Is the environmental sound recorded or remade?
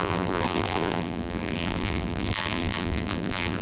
remade